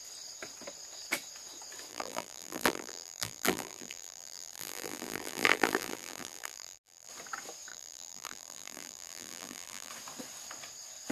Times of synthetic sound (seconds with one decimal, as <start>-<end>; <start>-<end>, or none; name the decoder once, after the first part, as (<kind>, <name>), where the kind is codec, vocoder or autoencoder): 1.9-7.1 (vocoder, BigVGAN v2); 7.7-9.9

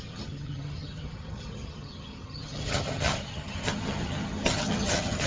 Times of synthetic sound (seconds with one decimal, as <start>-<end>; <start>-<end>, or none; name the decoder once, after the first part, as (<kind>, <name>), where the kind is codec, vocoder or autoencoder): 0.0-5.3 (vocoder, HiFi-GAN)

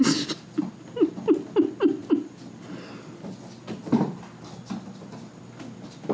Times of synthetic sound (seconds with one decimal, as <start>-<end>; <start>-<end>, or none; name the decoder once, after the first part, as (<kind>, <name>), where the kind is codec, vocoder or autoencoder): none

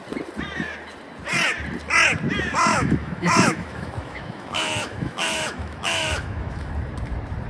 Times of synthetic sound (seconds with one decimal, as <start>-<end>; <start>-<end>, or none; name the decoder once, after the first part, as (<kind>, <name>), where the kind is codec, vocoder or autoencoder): 2.7-6.7 (autoencoder, DAC-VAE)

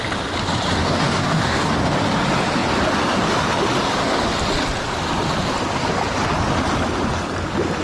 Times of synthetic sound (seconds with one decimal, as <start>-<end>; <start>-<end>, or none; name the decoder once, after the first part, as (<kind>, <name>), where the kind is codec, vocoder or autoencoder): 0.8-1.7 (codec, DAC)

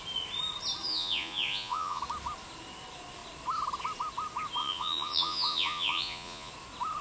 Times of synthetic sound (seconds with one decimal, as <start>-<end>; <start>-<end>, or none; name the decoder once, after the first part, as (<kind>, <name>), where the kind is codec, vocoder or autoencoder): 0.9-2.0 (vocoder, Vocos); 4.6-6.5

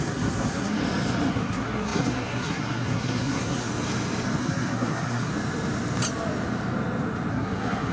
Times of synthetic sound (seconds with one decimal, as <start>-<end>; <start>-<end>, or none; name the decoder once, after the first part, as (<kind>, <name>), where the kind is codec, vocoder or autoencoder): 0.0-0.8 (codec, SNAC); 1.3-3.7; 4.4-5.3; 7.3-7.9

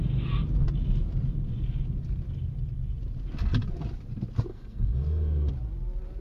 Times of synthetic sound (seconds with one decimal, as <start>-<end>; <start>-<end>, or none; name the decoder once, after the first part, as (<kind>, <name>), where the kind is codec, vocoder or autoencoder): 4.5-5.5 (codec, SNAC)